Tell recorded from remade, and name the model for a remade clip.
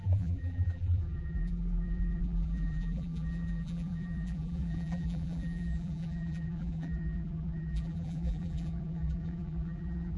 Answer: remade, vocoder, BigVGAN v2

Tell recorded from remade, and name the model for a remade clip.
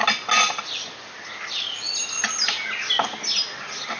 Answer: recorded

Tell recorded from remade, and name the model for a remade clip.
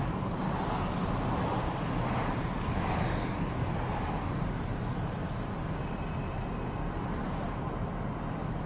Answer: recorded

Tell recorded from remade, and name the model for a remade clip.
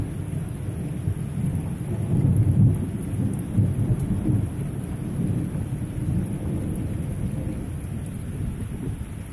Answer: recorded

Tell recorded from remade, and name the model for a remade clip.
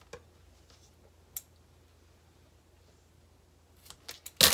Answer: recorded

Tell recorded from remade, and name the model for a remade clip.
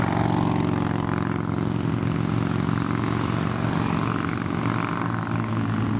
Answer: recorded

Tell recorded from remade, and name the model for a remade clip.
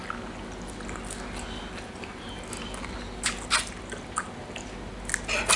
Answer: recorded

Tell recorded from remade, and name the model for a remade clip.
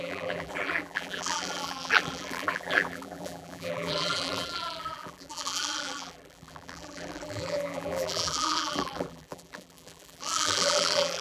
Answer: remade, vocoder, BigVGAN v2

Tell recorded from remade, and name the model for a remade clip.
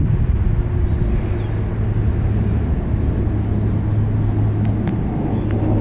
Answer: recorded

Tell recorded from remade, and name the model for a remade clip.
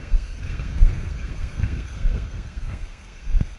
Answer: remade, codec, SNAC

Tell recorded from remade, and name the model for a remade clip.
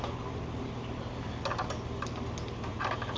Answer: recorded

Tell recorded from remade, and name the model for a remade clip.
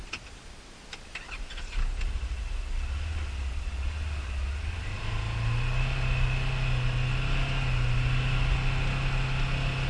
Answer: recorded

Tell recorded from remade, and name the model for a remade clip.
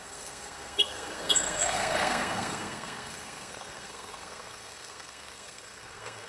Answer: remade, codec, SNAC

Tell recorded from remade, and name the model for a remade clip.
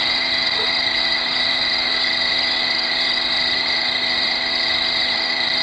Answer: remade, vocoder, BigVGAN v2